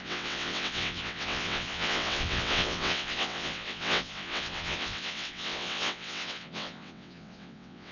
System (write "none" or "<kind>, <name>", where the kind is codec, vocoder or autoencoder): vocoder, WaveNeXt